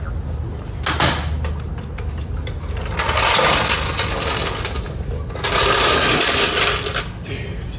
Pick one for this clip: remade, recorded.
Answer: recorded